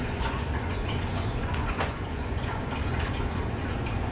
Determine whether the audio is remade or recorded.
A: remade